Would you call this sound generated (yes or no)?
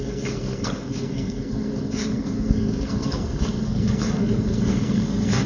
yes